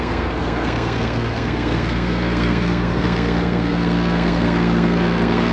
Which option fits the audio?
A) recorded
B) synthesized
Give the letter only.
B